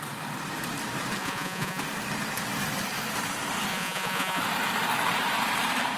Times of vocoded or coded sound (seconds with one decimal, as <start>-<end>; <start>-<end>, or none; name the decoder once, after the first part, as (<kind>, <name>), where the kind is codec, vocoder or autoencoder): 1.2-1.8 (vocoder, Vocos); 3.7-4.4